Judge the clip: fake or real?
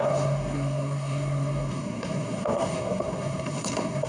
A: fake